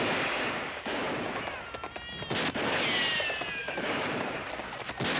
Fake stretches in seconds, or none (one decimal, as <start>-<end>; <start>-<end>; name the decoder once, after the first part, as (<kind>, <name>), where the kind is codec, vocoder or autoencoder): 0.0-1.0 (codec, DAC); 3.6-4.4